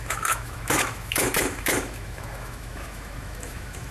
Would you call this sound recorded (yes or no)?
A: no